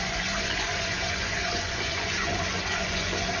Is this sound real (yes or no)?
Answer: no